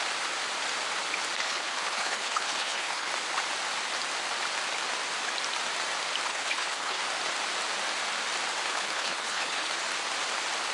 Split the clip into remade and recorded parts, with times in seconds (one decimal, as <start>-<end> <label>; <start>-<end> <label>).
0.0-1.4 recorded; 1.4-3.1 remade; 3.1-6.3 recorded; 6.3-7.0 remade; 7.0-8.7 recorded; 8.7-9.7 remade; 9.7-10.7 recorded